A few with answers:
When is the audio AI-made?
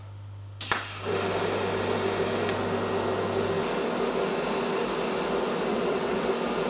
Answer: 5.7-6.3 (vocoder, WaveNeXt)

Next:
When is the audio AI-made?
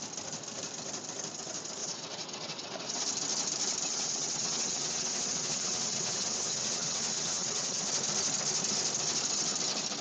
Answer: 1.8-3.0 (vocoder, WaveNeXt); 3.9-7.9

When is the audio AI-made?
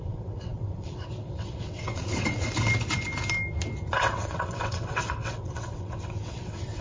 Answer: 0.0-2.5 (vocoder, WaveNeXt); 3.9-6.8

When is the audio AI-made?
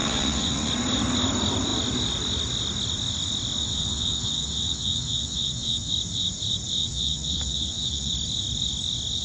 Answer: 0.0-0.7 (vocoder, WaveNeXt); 3.6-5.9; 6.8-8.1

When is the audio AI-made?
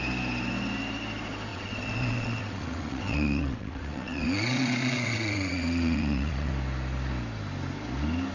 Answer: 1.5-6.5 (vocoder, WaveNeXt)